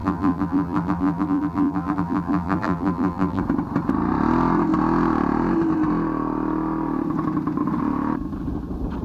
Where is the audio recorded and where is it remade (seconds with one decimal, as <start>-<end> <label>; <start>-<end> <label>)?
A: 0.0-3.4 remade; 3.4-9.0 recorded